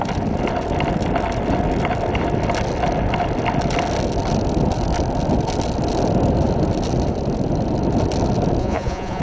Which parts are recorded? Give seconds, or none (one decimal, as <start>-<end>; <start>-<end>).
0.0-8.6